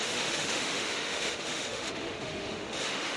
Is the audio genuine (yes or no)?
no